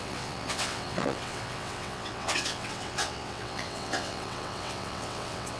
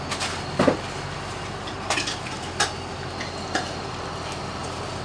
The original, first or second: second